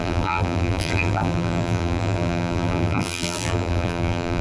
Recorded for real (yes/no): no